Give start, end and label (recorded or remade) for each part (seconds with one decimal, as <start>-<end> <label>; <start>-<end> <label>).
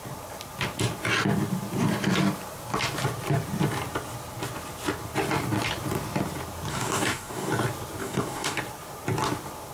0.0-6.7 recorded; 6.7-7.5 remade; 7.5-8.0 recorded; 8.0-8.6 remade; 8.6-9.7 recorded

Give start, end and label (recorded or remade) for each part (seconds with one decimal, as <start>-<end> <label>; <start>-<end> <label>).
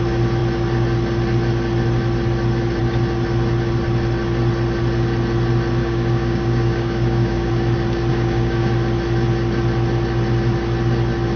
0.0-5.8 recorded; 5.8-7.5 remade; 7.5-8.1 recorded; 8.1-8.7 remade; 8.7-11.4 recorded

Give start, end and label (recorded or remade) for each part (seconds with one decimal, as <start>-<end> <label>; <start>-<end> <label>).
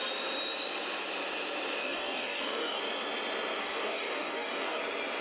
0.0-1.8 recorded; 1.8-2.8 remade; 2.8-3.6 recorded; 3.6-4.8 remade; 4.8-5.2 recorded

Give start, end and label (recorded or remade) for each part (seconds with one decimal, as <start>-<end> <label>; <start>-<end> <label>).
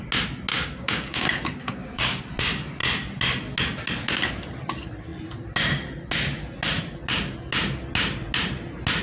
0.0-0.5 recorded; 0.5-2.2 remade; 2.2-9.0 recorded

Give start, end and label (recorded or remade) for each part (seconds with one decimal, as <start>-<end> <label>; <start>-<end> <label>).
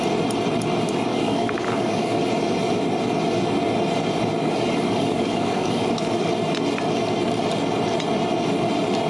0.0-1.1 recorded; 1.1-2.3 remade; 2.3-4.4 recorded; 4.4-6.3 remade; 6.3-9.1 recorded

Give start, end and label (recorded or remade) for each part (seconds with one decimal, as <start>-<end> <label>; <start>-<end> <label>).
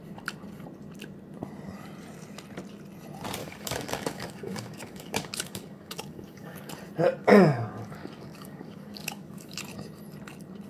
0.0-3.4 recorded; 3.4-6.7 remade; 6.7-7.2 recorded; 7.2-9.6 remade; 9.6-10.7 recorded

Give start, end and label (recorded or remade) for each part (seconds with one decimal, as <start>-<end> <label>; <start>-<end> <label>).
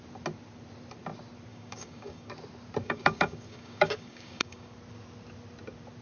0.0-1.5 recorded; 1.5-2.3 remade; 2.3-2.8 recorded; 2.8-4.7 remade; 4.7-6.0 recorded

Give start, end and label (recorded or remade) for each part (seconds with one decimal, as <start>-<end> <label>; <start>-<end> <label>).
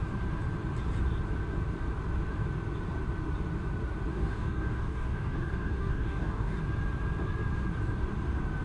0.0-4.1 recorded; 4.1-6.6 remade; 6.6-8.6 recorded